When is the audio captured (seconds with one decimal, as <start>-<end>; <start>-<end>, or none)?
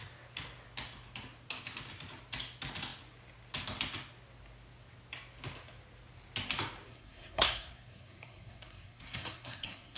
0.0-6.9